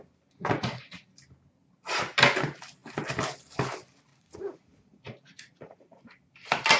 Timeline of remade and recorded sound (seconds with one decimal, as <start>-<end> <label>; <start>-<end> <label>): 0.0-0.4 recorded; 0.4-1.1 remade; 1.1-4.1 recorded; 4.1-6.0 remade; 6.0-6.8 recorded